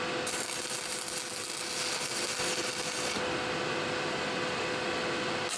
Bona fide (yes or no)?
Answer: yes